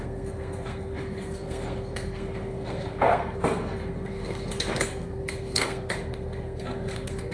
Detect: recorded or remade remade